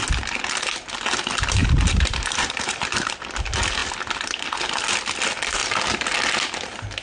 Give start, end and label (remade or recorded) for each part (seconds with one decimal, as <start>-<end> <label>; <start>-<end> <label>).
0.0-1.6 recorded; 1.6-3.1 remade; 3.1-7.0 recorded